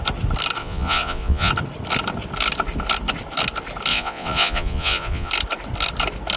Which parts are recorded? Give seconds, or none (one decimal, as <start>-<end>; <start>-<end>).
0.0-0.6; 1.5-3.9; 5.3-6.4